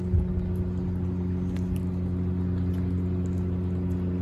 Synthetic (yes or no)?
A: no